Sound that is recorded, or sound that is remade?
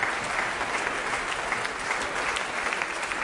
recorded